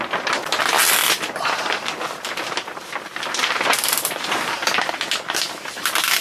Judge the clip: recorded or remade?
recorded